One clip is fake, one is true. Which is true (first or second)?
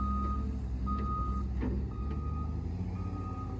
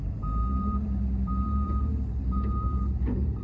first